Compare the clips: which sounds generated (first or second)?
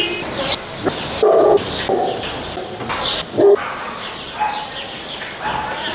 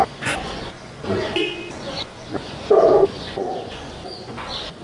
second